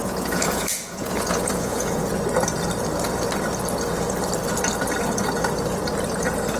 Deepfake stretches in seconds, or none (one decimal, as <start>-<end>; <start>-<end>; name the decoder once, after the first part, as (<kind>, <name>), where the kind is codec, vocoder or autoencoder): 0.0-2.1 (vocoder, Vocos)